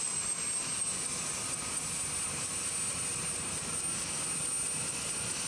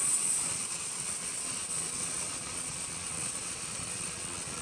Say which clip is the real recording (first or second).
first